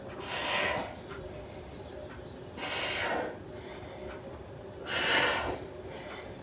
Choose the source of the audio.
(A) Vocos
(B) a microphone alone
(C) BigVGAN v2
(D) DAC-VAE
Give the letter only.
B